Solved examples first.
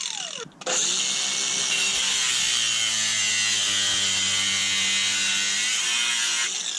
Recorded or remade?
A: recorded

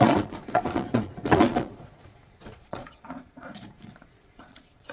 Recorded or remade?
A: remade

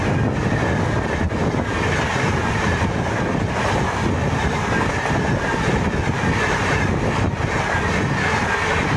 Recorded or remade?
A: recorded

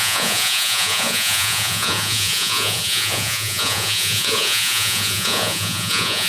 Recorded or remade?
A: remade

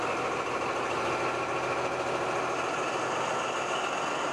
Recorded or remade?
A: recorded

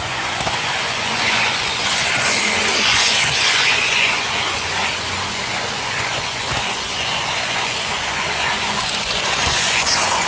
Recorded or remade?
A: remade